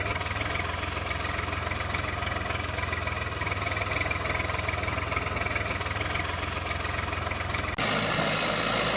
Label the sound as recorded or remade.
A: recorded